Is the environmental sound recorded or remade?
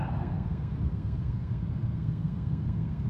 remade